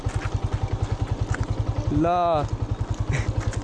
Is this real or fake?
real